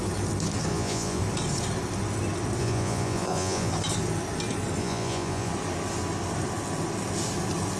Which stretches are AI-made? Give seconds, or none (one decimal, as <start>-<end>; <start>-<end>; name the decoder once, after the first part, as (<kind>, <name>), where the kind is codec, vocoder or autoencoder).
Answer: 0.7-1.2 (vocoder, Vocos); 2.6-3.7; 4.8-5.5